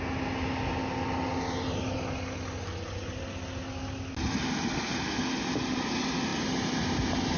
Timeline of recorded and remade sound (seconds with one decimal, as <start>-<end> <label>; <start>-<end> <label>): 0.0-7.4 recorded